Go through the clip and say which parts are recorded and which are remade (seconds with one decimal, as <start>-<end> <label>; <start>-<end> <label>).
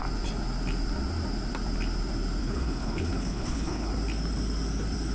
0.0-2.4 recorded; 2.4-3.9 remade; 3.9-5.1 recorded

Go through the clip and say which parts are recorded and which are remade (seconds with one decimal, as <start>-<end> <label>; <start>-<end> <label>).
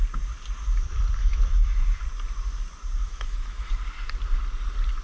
0.0-1.2 recorded; 1.2-2.0 remade; 2.0-3.0 recorded; 3.0-3.7 remade; 3.7-5.0 recorded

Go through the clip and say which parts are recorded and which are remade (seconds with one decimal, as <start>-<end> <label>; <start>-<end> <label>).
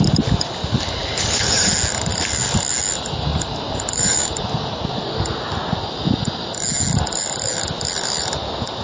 0.0-1.0 recorded; 1.0-1.7 remade; 1.7-3.3 recorded; 3.3-5.1 remade; 5.1-8.8 recorded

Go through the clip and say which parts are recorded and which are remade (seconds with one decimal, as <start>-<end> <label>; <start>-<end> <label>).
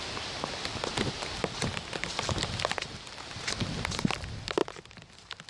0.0-5.5 recorded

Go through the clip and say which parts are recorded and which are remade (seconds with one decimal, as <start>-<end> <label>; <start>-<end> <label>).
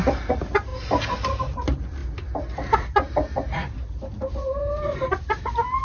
0.0-5.8 recorded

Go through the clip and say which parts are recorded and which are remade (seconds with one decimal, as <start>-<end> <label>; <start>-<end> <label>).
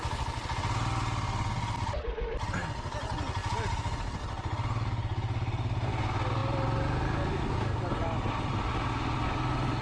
0.0-9.8 recorded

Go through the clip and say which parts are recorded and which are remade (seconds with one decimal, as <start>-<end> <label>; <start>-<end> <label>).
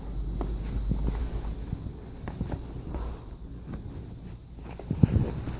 0.0-5.6 recorded